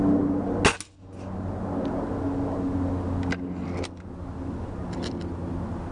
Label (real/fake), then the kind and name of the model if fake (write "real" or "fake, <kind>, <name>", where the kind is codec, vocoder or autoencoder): real